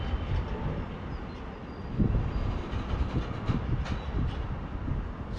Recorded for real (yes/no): yes